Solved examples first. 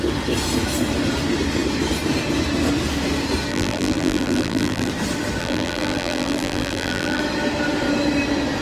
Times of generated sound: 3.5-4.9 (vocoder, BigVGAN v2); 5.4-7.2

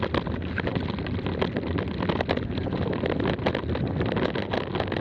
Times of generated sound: none

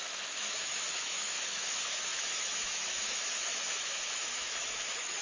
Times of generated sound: 0.0-5.2 (autoencoder, DAC-VAE)

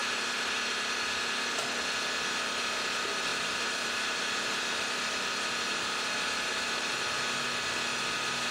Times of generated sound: 0.0-0.7 (vocoder, BigVGAN v2); 3.3-7.2

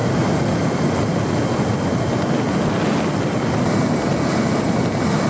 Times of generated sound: none

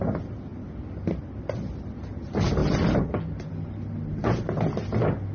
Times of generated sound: none